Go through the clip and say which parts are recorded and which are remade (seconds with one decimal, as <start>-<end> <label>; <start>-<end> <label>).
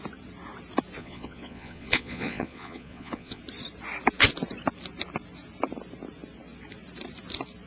0.0-1.0 recorded; 1.0-3.4 remade; 3.4-7.7 recorded